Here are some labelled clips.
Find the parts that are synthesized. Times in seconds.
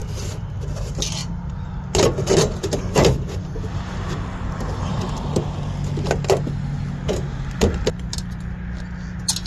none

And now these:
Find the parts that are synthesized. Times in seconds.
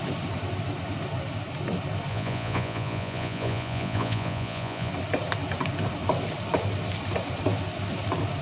2.1-4.9 (vocoder, Vocos)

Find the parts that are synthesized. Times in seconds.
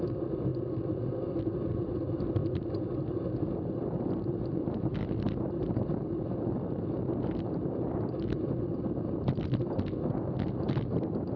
none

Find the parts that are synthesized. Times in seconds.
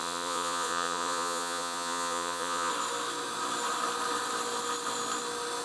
0.0-2.7 (vocoder, Vocos)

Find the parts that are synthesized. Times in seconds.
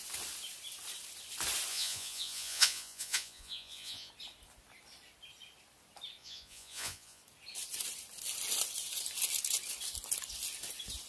1.7-4.1 (vocoder, Vocos); 6.2-7.2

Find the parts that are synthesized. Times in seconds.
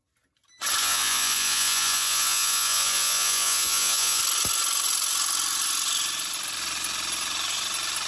0.8-4.2 (vocoder, Vocos)